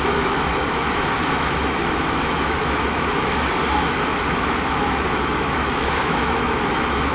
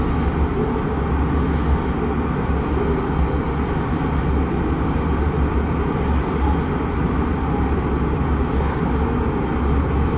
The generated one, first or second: first